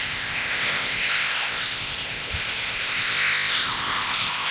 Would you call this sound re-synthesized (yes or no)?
yes